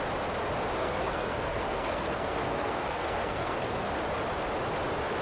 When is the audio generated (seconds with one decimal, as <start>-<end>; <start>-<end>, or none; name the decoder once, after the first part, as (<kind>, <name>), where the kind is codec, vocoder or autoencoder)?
0.8-3.9 (codec, SNAC)